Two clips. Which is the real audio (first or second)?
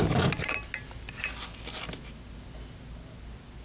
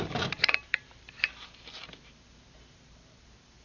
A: first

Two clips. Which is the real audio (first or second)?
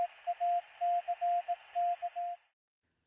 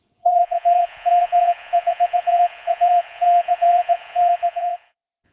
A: first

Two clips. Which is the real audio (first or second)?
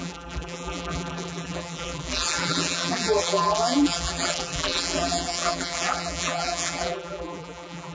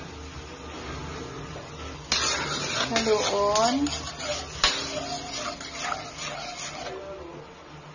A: second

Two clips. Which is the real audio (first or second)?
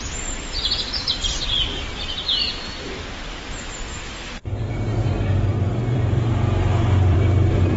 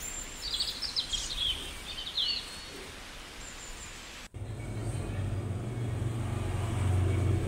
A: second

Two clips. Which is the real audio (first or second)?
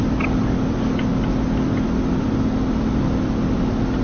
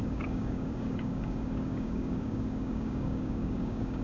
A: first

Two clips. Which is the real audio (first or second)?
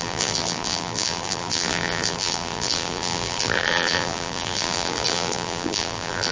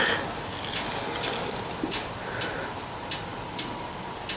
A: second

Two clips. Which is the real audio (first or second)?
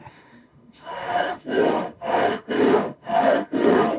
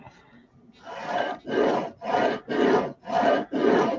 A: second